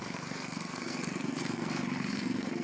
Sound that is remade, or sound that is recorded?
remade